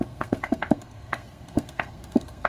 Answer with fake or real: fake